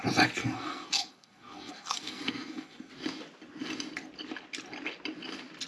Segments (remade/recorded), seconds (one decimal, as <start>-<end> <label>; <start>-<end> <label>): 0.0-0.4 recorded; 0.4-2.9 remade; 2.9-5.7 recorded